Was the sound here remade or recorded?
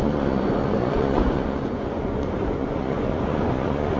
remade